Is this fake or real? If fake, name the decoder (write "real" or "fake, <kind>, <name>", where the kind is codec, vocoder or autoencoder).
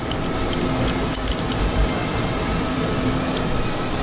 real